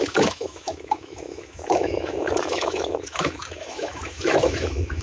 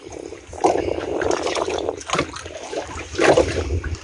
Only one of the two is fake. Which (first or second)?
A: first